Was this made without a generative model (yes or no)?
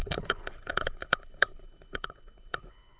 no